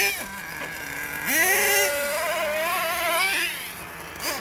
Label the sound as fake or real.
real